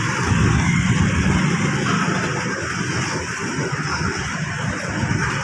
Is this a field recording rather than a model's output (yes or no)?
yes